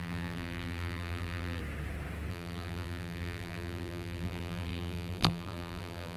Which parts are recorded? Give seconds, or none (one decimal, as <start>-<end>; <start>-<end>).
1.6-2.3